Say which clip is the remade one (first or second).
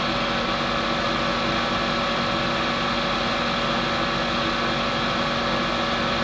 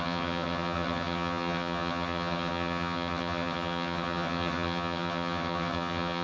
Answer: second